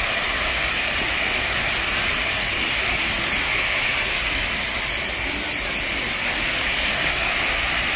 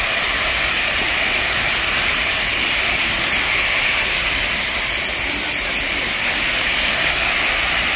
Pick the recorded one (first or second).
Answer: first